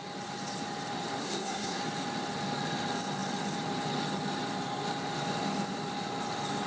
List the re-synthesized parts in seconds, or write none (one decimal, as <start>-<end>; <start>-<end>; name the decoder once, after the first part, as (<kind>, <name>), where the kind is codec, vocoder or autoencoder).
1.2-1.8 (codec, SNAC)